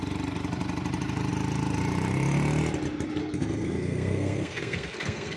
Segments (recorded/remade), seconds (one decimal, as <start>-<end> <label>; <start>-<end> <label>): 0.0-3.2 recorded; 3.2-5.4 remade